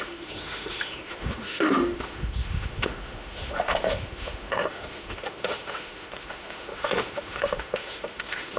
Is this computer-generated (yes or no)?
yes